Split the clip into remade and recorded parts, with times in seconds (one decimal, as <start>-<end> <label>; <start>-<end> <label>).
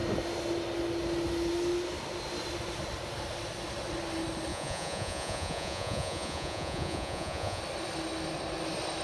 0.0-4.5 recorded; 4.5-7.6 remade; 7.6-9.0 recorded